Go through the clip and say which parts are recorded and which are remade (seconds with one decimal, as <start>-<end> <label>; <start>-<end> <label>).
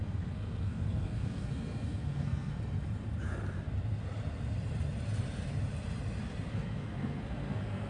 0.0-2.5 remade; 2.5-6.5 recorded; 6.5-7.9 remade